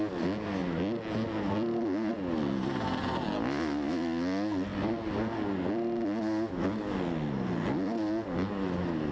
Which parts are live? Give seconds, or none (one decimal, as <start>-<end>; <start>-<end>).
0.0-9.1